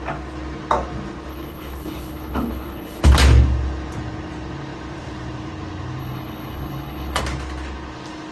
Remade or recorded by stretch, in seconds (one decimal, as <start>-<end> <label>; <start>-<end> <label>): 0.0-1.3 recorded; 1.3-3.0 remade; 3.0-6.0 recorded; 6.0-7.2 remade; 7.2-8.3 recorded